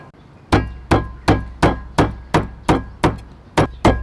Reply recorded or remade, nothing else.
recorded